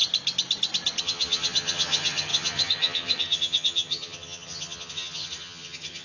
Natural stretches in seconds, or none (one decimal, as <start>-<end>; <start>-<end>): 0.0-1.0